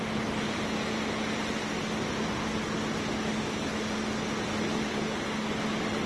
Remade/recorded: recorded